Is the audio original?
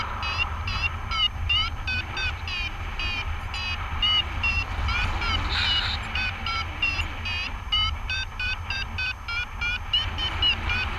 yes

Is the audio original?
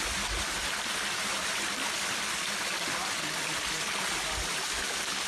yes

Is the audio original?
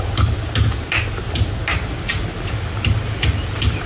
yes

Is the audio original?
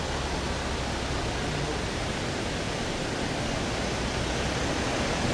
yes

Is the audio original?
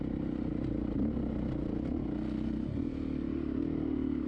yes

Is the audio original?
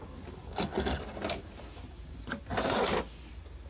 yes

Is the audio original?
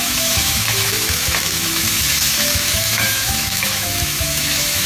no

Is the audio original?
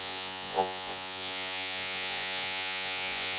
no